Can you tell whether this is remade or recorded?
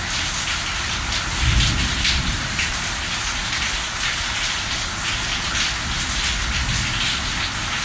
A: recorded